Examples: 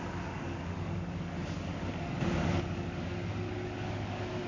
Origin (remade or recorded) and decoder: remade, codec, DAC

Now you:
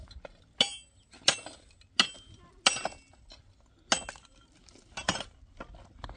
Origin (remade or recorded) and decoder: recorded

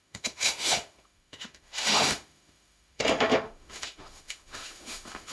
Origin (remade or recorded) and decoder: remade, autoencoder, DAC-VAE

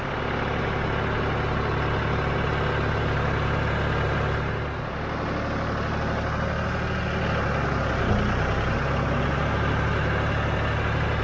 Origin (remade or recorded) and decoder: recorded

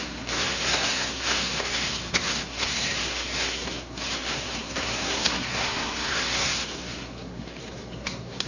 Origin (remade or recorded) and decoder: remade, codec, SNAC